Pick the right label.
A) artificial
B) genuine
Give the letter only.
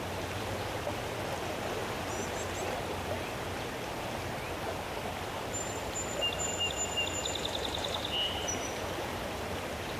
B